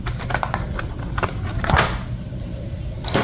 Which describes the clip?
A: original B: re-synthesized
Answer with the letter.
B